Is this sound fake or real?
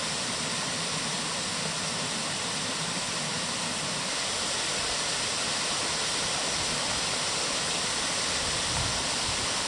real